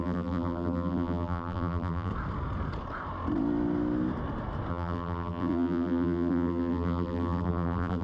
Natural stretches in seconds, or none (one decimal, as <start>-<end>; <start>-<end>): 2.1-4.7